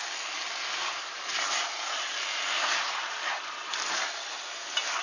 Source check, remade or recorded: recorded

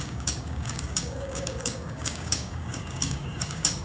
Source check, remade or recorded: remade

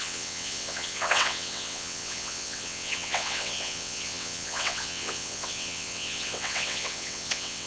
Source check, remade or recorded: remade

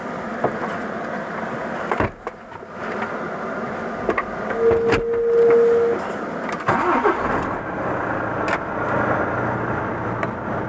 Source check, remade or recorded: recorded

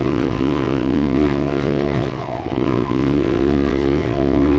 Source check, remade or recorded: remade